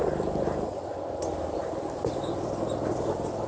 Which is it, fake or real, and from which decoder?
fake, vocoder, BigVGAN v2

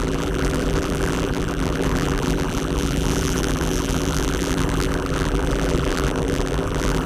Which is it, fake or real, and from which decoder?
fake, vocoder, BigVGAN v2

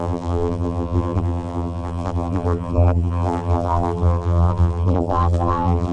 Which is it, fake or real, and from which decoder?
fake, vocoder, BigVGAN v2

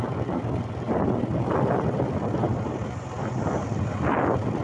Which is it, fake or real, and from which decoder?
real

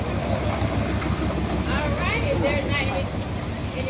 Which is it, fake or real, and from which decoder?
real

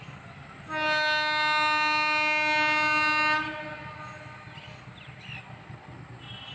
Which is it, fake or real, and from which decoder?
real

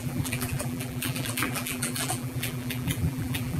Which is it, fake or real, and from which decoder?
fake, vocoder, BigVGAN v2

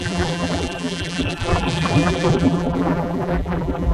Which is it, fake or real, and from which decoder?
fake, vocoder, BigVGAN v2